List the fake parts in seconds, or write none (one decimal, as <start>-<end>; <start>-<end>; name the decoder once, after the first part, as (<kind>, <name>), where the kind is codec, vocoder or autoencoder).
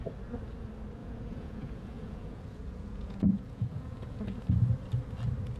1.0-4.4 (vocoder, Vocos)